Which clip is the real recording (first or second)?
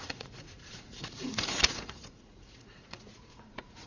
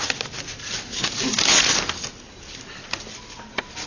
second